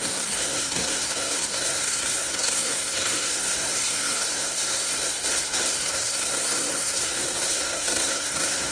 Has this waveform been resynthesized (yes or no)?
yes